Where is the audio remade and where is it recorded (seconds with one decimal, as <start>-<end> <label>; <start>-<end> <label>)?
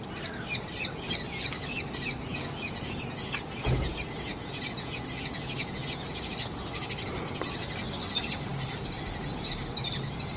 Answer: 0.0-2.3 recorded; 2.3-6.3 remade; 6.3-10.4 recorded